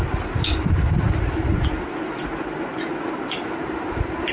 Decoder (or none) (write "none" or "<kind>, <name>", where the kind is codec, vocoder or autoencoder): none